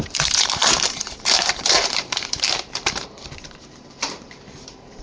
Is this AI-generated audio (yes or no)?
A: yes